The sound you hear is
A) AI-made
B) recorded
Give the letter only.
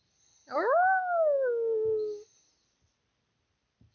B